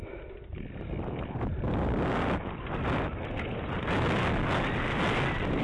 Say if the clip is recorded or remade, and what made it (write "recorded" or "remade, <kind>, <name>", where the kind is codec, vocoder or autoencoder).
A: recorded